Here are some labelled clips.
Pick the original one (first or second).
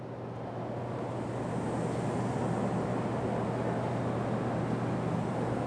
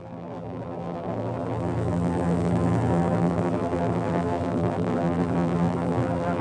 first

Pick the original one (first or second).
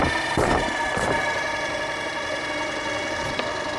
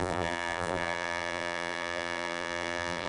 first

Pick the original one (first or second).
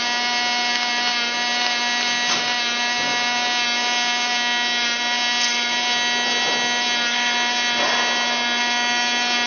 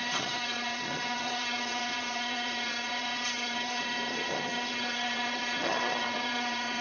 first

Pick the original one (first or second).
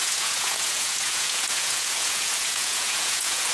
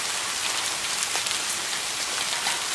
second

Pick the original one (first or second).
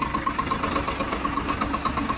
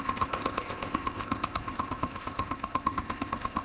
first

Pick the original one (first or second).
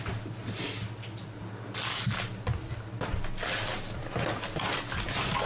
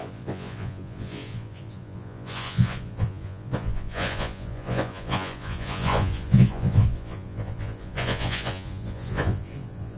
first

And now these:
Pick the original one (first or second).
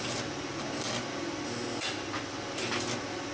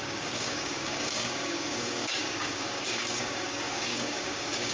first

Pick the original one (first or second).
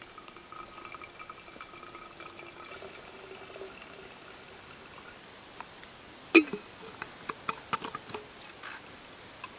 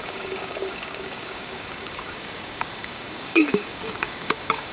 first